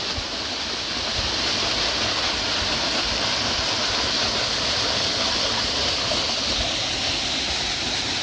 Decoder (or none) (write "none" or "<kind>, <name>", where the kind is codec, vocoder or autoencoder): none